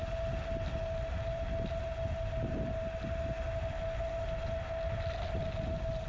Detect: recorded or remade recorded